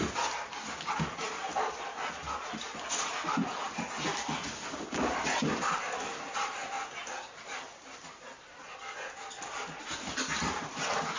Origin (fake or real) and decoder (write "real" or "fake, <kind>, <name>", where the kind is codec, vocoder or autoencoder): real